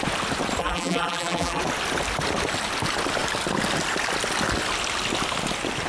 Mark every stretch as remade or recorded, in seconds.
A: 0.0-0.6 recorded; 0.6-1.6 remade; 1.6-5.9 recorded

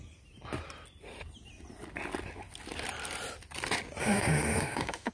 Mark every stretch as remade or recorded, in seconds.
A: 0.0-4.0 recorded; 4.0-5.1 remade

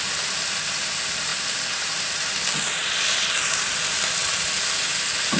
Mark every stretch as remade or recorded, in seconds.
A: 0.0-5.4 recorded

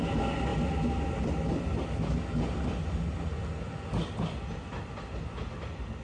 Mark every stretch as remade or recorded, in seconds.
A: 0.0-6.0 recorded

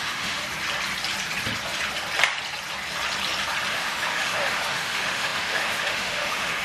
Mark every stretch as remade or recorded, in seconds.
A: 0.0-0.4 remade; 0.4-3.7 recorded; 3.7-6.6 remade

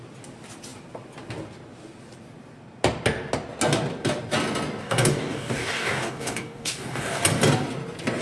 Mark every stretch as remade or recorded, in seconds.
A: 0.0-4.8 recorded; 4.8-7.2 remade; 7.2-8.2 recorded

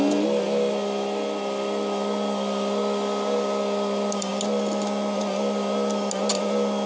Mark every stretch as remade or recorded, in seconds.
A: 0.0-6.9 recorded